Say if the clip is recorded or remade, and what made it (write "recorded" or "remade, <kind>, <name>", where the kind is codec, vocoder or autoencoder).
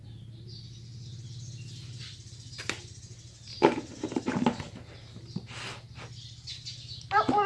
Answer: recorded